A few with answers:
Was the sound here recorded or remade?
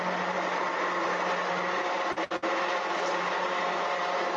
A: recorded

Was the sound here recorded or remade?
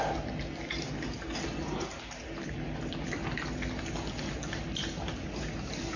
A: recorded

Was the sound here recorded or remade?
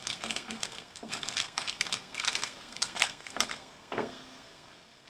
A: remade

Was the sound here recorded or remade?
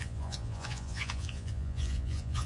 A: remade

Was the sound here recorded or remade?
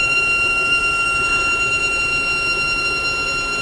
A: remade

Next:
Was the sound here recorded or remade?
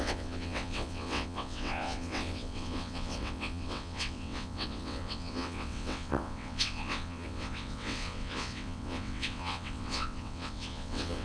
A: remade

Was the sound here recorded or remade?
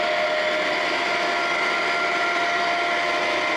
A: recorded